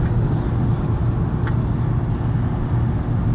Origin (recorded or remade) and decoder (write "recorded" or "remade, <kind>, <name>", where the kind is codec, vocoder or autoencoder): recorded